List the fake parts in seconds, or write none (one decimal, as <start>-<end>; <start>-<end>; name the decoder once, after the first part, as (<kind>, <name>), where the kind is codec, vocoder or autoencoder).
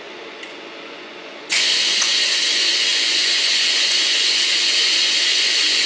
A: 0.0-5.9 (vocoder, Vocos)